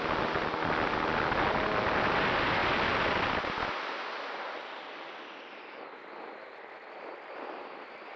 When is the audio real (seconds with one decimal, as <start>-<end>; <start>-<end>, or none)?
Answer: 0.0-8.2